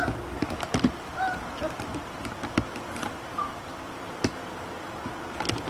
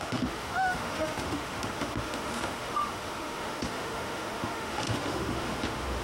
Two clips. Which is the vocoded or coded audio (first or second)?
second